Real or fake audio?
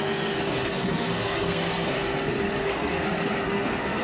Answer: fake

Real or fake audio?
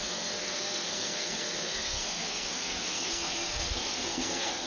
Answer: fake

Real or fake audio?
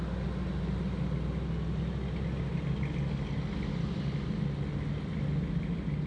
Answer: real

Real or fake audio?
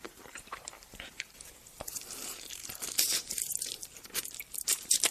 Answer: fake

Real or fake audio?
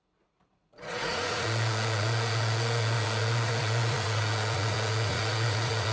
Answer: fake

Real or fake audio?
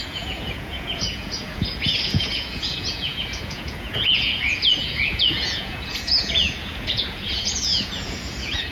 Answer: fake